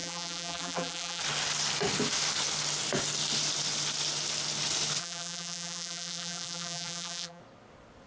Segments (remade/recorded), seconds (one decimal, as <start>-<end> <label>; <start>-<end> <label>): 0.0-1.2 remade; 1.2-5.0 recorded; 5.0-7.4 remade; 7.4-8.1 recorded